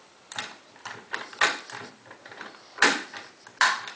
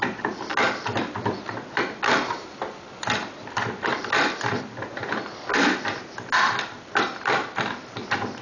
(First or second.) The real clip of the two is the second